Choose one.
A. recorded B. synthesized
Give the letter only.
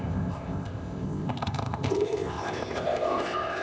B